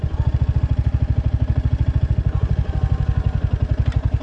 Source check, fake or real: real